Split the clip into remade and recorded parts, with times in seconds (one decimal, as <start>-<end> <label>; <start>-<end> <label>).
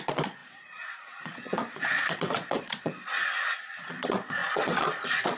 0.0-5.4 remade